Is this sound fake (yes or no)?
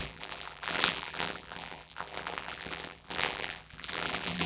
yes